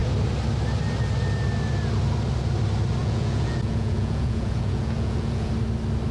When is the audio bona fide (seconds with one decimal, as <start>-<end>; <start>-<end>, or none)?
0.0-3.0; 5.5-6.1